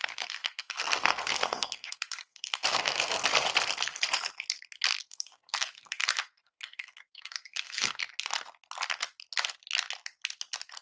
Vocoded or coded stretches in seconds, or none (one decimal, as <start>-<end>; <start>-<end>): 0.0-3.2; 5.0-8.0